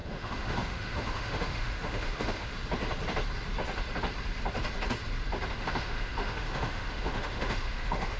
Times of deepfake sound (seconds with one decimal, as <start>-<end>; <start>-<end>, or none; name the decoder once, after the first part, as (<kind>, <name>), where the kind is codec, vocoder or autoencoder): 0.0-2.5 (autoencoder, DAC-VAE); 5.5-8.2